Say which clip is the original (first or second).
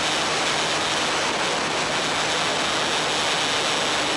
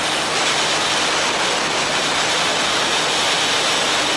first